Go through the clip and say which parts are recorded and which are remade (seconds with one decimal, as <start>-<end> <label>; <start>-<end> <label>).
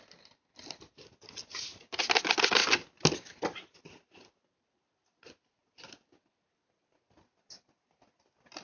0.0-8.6 recorded